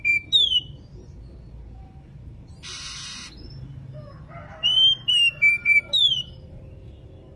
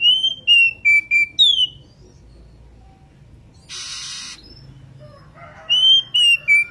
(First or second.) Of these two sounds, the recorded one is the second